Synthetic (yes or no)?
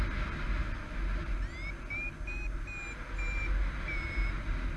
no